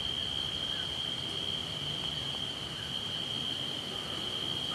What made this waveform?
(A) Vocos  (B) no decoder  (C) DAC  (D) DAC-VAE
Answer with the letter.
B